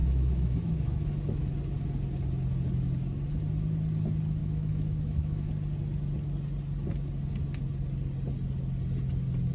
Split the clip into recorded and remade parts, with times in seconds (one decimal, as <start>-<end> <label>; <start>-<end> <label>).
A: 0.0-1.4 remade; 1.4-4.4 recorded; 4.4-5.5 remade; 5.5-9.5 recorded